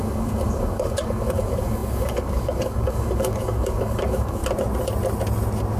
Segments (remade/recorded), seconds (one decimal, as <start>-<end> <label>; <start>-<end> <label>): 0.0-4.4 remade; 4.4-5.8 recorded